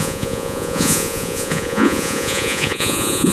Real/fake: fake